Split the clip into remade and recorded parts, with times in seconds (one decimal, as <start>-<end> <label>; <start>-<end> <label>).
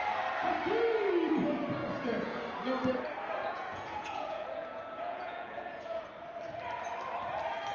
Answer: 0.0-1.8 recorded; 1.8-2.4 remade; 2.4-3.4 recorded; 3.4-6.1 remade; 6.1-7.7 recorded